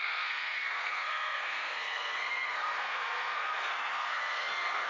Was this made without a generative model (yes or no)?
no